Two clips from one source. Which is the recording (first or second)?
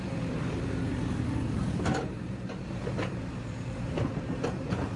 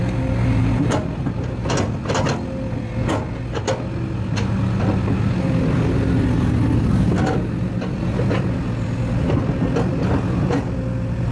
second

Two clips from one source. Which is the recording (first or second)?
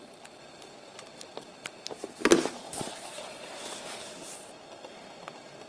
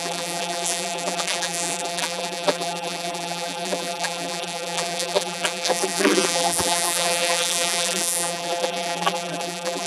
first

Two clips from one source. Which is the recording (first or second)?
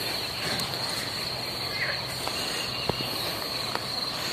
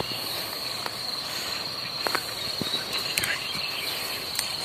first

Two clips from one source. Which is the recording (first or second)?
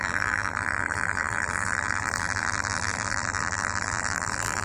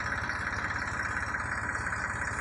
second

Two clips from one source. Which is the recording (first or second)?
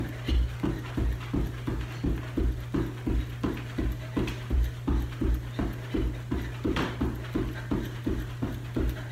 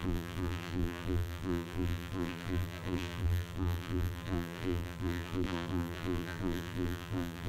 first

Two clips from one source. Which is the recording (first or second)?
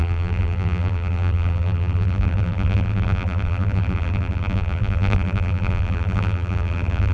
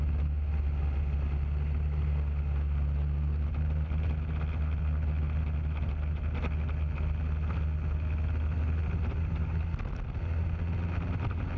second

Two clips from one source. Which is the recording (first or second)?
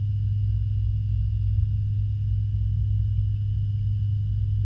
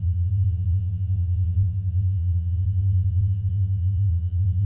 first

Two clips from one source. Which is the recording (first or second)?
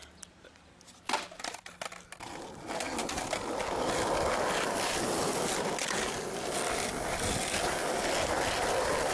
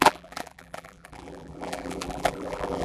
first